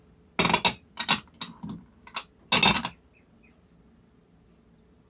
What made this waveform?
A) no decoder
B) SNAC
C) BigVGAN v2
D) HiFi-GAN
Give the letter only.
A